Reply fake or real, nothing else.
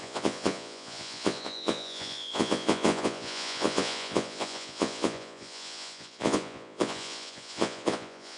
fake